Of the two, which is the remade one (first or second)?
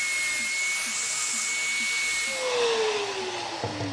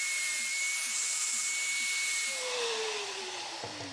second